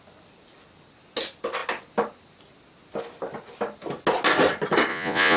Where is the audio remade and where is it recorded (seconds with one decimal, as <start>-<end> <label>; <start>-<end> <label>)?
0.0-4.9 recorded; 4.9-5.4 remade